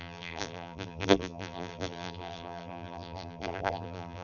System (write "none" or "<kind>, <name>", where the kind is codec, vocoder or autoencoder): vocoder, BigVGAN v2